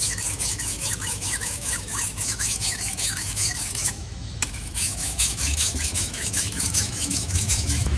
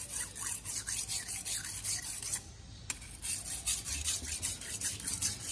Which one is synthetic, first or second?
first